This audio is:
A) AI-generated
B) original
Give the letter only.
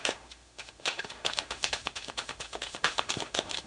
A